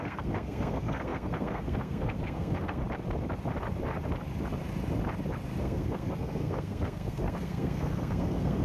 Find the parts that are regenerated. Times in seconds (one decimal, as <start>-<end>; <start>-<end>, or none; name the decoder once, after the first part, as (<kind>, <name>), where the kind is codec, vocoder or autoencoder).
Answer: 0.0-2.8 (codec, SNAC); 5.6-8.6